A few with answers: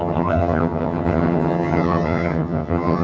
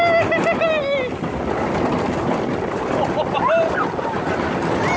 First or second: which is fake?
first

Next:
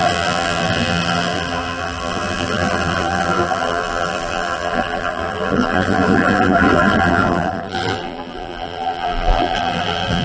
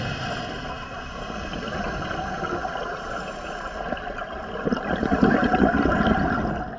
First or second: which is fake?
first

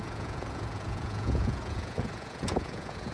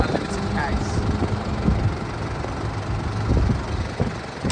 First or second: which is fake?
first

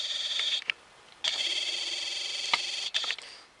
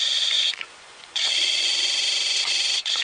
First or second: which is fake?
second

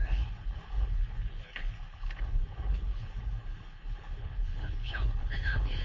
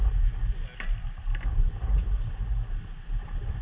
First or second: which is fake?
first